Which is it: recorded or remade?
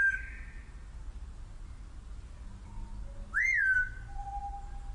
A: recorded